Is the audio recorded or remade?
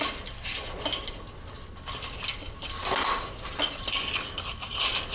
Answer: recorded